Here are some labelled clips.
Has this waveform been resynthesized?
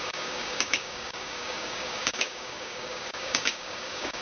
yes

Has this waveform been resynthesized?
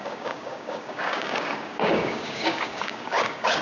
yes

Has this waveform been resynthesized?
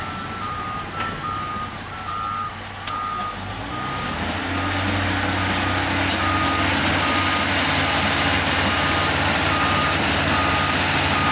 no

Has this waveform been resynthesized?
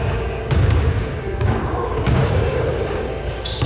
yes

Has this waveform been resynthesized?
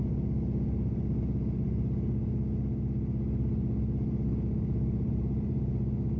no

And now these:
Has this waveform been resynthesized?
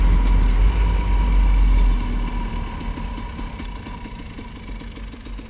no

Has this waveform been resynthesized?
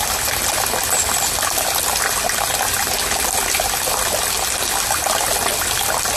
no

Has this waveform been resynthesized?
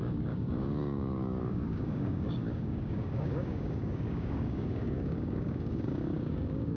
yes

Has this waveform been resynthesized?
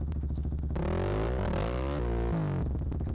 no